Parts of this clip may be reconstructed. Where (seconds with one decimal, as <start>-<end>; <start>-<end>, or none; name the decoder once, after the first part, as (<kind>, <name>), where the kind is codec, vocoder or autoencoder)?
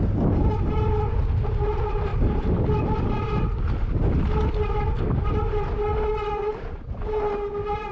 2.1-5.4 (vocoder, BigVGAN v2); 5.9-7.0